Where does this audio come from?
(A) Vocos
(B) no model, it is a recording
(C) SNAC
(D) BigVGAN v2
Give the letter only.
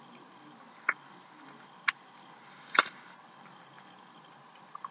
B